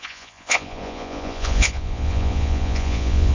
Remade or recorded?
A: remade